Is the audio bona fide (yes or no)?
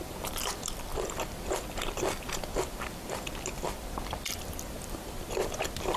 no